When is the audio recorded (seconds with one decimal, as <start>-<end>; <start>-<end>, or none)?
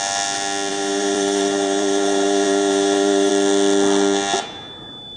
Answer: 0.0-0.7; 3.3-5.2